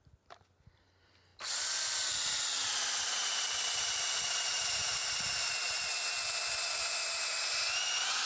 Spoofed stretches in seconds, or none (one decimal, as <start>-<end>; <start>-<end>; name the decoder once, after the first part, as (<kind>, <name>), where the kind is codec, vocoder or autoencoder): 6.8-7.3 (vocoder, BigVGAN v2)